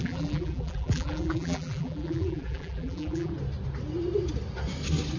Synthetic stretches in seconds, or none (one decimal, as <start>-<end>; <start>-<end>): 0.0-3.3